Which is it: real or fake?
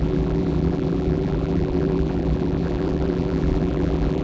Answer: fake